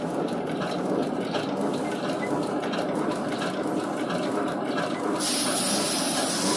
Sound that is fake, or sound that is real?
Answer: real